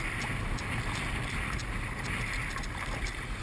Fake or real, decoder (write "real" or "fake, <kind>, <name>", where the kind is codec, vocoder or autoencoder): real